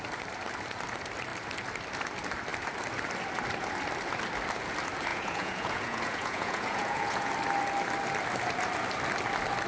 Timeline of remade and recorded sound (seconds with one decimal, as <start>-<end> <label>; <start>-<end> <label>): 0.0-5.1 recorded; 5.1-7.3 remade; 7.3-9.7 recorded